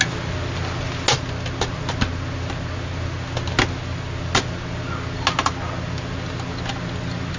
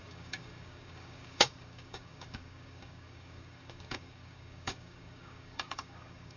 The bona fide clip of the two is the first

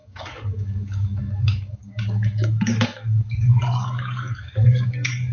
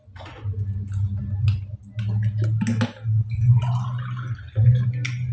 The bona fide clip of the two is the second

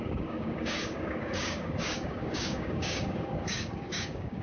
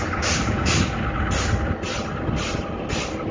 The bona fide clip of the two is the second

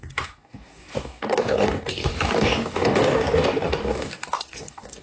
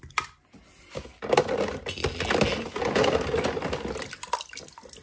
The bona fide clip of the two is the second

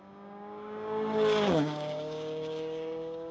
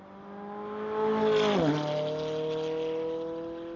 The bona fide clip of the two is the second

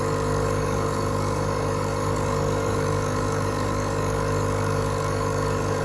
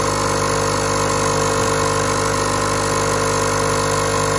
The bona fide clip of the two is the second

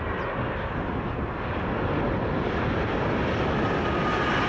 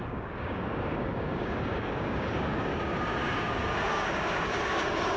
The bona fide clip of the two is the first